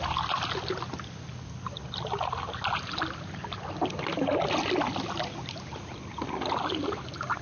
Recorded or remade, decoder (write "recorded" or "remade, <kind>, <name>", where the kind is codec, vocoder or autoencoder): recorded